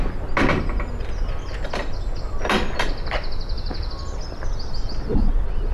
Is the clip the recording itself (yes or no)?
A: yes